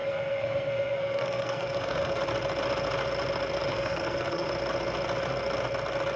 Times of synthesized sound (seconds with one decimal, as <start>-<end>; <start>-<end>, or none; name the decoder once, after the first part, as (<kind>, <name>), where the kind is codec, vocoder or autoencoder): 0.0-2.2 (codec, SNAC); 3.7-4.5